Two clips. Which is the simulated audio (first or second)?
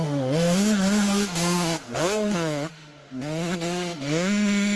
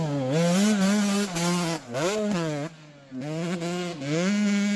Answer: first